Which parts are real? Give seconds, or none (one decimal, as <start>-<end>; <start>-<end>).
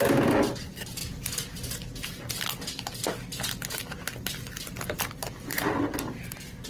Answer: 0.0-6.7